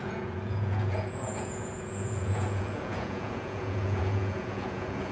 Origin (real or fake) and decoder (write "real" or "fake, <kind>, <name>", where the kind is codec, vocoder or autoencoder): fake, vocoder, Vocos